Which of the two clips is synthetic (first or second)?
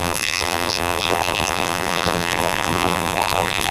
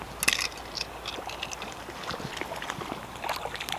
first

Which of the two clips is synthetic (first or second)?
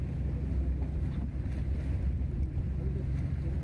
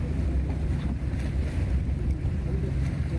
second